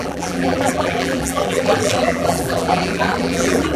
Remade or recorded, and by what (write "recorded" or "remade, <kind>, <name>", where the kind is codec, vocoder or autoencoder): remade, vocoder, BigVGAN v2